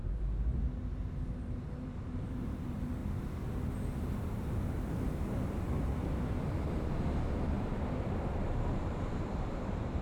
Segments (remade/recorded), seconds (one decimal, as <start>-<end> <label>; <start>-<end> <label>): 0.0-1.3 recorded; 1.3-3.0 remade; 3.0-8.2 recorded; 8.2-10.0 remade